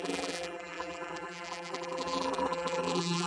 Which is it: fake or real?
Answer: fake